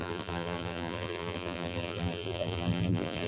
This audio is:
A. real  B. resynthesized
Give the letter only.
B